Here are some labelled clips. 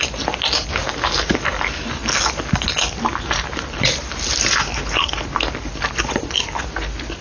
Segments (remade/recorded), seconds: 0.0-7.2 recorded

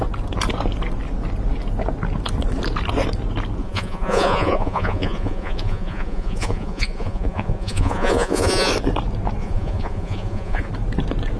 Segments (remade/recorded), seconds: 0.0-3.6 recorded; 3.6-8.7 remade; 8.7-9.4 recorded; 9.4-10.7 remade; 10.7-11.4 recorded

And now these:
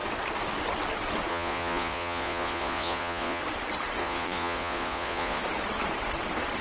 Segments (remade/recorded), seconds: 0.0-1.3 recorded; 1.3-3.4 remade; 3.4-4.0 recorded; 4.0-5.4 remade; 5.4-6.6 recorded

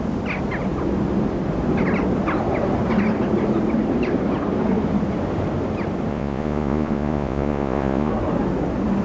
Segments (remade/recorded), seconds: 0.0-6.1 recorded; 6.1-8.1 remade; 8.1-9.0 recorded

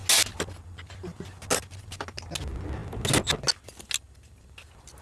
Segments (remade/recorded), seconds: 0.0-5.0 recorded

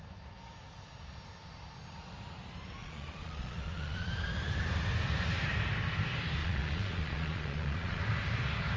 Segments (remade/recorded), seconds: 0.0-2.8 recorded; 2.8-4.1 remade; 4.1-6.4 recorded; 6.4-8.0 remade; 8.0-8.8 recorded

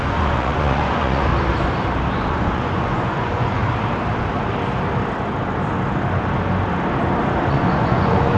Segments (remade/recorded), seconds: 0.0-1.3 remade; 1.3-2.1 recorded; 2.1-3.6 remade; 3.6-7.5 recorded; 7.5-8.4 remade